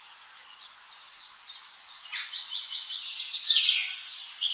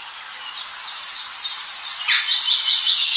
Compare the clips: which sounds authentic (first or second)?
second